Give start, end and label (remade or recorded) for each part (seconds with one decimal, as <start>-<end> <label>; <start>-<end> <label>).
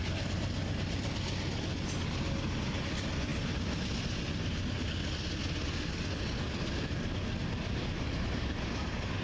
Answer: 0.0-9.2 recorded